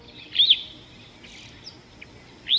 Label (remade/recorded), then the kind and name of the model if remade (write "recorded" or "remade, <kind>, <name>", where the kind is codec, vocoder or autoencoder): recorded